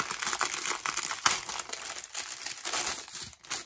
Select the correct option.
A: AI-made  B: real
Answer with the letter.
B